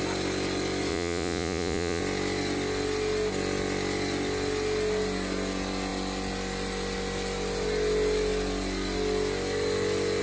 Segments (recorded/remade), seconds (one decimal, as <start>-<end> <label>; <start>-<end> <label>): 0.0-0.9 recorded; 0.9-2.0 remade; 2.0-10.2 recorded